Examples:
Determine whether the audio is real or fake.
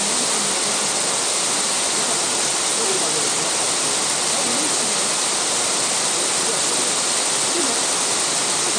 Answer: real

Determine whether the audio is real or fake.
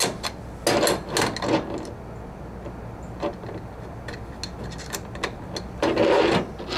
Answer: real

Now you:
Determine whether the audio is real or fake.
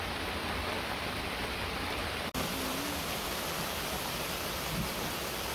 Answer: real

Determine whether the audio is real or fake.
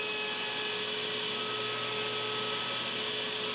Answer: real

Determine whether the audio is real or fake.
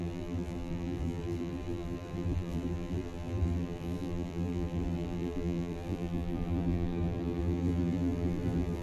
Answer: fake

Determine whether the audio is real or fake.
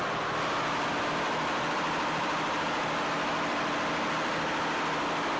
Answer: real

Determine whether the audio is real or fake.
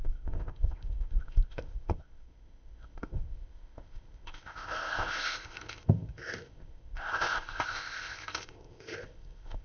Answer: fake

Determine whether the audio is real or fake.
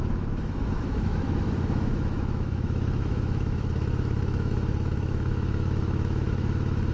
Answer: fake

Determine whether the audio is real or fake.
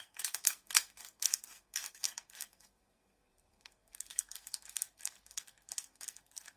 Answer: fake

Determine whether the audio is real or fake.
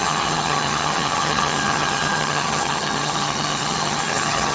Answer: fake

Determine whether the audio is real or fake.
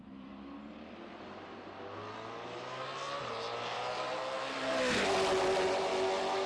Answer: real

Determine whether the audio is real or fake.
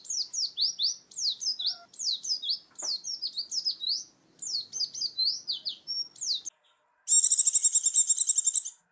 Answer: real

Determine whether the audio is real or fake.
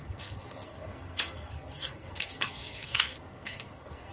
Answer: fake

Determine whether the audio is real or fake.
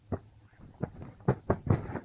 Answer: real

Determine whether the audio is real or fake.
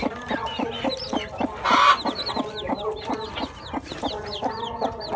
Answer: real